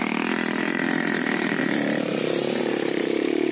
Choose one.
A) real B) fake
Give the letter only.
B